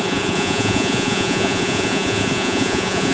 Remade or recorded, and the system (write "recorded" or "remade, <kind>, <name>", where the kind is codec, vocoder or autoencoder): remade, vocoder, Vocos